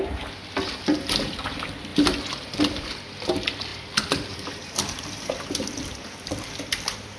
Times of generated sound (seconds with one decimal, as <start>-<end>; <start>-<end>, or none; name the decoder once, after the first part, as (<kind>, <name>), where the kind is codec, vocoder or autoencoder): 0.0-7.2 (vocoder, BigVGAN v2)